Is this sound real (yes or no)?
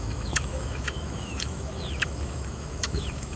no